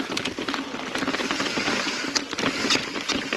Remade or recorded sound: recorded